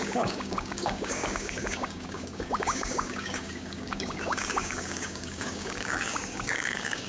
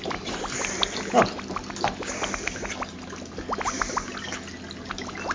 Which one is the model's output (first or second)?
first